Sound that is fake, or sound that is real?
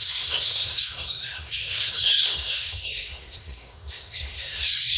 fake